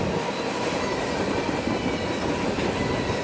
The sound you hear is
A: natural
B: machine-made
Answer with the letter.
A